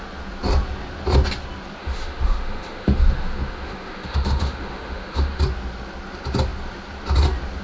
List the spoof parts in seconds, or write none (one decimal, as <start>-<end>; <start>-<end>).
1.8-5.4